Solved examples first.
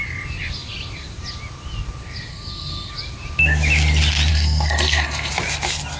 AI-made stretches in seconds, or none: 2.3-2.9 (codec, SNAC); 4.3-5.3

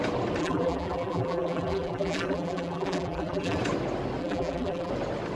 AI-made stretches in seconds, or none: 0.4-3.6 (vocoder, BigVGAN v2); 4.2-4.9

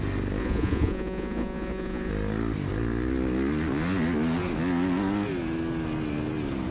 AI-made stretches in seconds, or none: 0.4-2.1 (vocoder, Vocos)